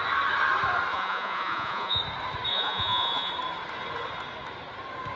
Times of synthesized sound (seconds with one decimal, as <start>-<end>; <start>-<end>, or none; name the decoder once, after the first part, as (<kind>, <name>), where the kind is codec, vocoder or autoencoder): 0.9-2.0 (vocoder, Vocos); 2.5-3.3